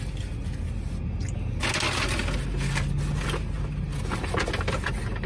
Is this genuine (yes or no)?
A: yes